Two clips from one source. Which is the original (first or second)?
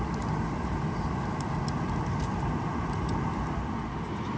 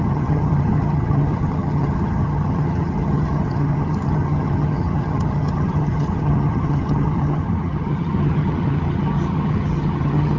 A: first